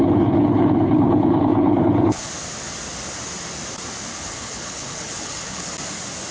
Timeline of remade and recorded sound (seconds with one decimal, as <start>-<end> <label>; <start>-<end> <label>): 0.0-2.3 remade; 2.3-4.1 recorded; 4.1-5.7 remade; 5.7-6.3 recorded